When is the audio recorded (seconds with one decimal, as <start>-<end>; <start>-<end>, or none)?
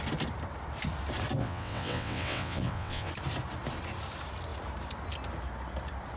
0.0-1.4; 3.1-6.2